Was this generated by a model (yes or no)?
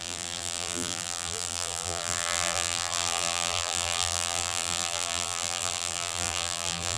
yes